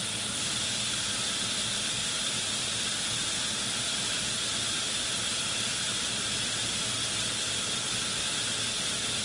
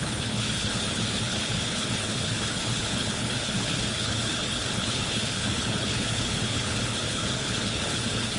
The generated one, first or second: second